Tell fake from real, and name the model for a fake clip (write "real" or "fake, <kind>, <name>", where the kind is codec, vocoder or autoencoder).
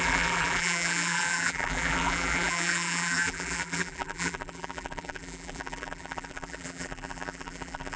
fake, vocoder, BigVGAN v2